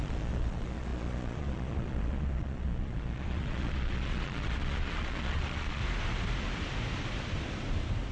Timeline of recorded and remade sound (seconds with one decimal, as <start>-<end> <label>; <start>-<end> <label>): 0.0-5.8 remade; 5.8-8.1 recorded